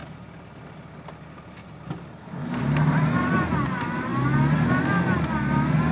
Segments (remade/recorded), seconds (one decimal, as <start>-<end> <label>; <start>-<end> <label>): 0.0-5.9 recorded